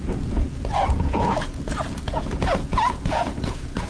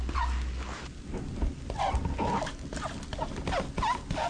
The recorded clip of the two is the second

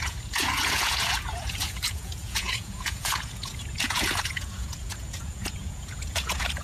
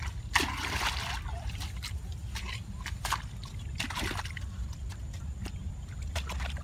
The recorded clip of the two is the second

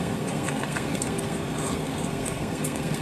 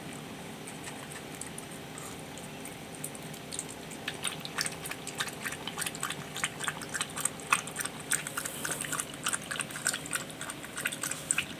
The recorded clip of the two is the second